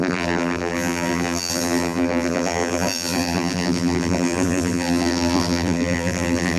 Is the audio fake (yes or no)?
yes